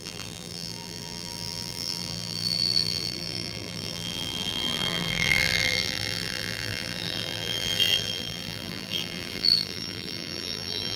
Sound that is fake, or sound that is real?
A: fake